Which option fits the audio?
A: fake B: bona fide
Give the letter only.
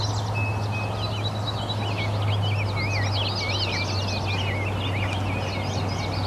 B